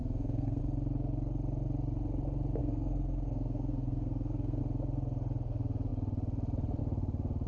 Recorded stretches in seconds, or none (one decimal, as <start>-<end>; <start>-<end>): 0.6-2.6; 4.6-7.5